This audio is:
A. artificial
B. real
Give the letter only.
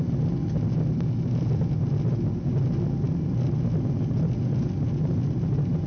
B